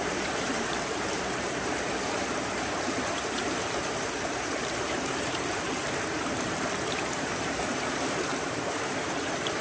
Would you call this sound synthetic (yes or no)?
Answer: yes